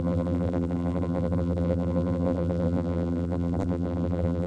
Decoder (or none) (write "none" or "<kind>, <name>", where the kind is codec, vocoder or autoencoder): vocoder, BigVGAN v2